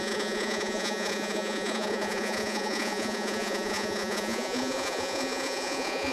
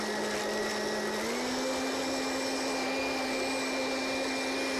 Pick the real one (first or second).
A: second